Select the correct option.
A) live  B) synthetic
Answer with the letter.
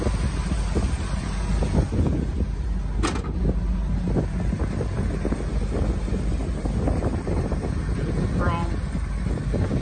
A